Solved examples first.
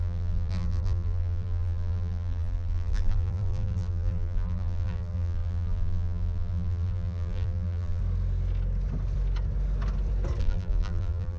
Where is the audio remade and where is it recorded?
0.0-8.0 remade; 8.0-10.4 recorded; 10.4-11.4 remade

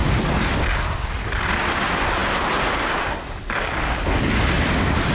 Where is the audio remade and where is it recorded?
0.0-5.1 recorded